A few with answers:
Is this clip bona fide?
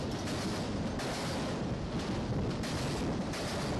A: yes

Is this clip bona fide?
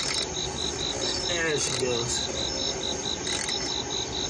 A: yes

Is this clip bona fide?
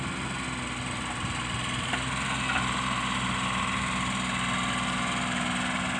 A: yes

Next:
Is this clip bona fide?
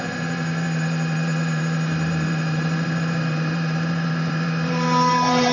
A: no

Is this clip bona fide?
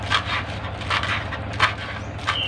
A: yes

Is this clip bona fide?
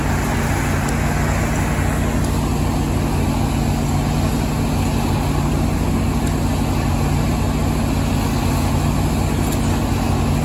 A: yes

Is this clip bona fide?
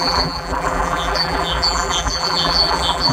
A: no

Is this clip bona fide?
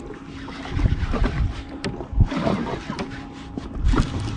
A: yes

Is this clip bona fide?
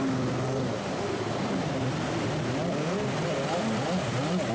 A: yes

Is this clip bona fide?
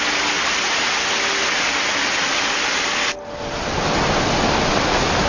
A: yes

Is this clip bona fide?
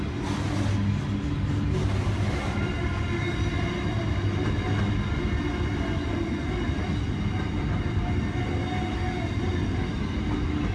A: yes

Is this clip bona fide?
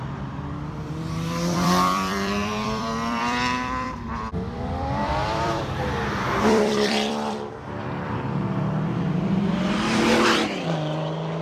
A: no